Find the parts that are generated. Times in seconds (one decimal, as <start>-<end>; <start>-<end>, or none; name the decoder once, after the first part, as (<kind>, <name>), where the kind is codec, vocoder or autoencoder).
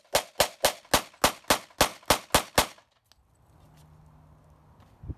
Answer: none